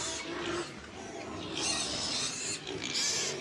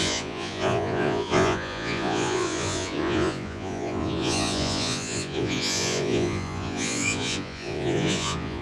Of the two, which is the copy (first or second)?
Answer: second